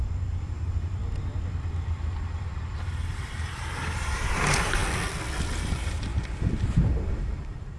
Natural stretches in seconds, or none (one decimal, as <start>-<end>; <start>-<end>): 1.0-1.7; 4.8-5.6